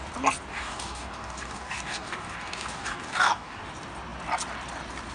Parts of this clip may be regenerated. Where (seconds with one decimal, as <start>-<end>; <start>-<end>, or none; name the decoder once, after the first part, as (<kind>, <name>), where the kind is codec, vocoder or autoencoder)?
0.5-3.6 (codec, DAC)